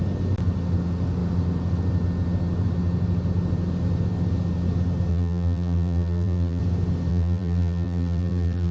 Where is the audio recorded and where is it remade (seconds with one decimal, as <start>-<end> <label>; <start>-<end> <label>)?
0.0-5.1 recorded; 5.1-6.6 remade; 6.6-7.1 recorded; 7.1-8.7 remade